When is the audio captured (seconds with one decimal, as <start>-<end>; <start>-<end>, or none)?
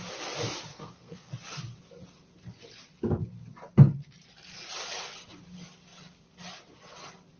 0.0-0.7; 1.3-7.4